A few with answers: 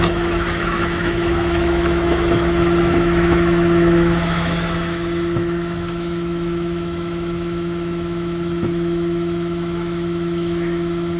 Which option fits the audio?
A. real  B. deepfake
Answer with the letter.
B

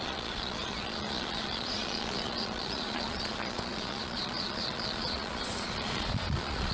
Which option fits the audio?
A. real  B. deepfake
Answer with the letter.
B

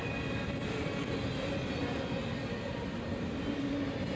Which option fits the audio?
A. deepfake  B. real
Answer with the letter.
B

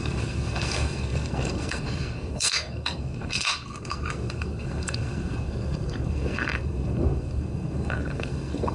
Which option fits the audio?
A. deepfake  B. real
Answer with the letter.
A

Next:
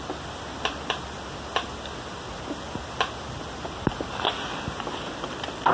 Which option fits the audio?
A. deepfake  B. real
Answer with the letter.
B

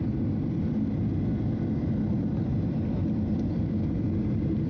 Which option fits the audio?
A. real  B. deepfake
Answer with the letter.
A